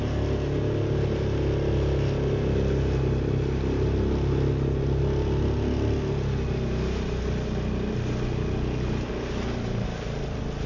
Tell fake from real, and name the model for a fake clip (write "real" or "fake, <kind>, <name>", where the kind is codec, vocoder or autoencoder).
real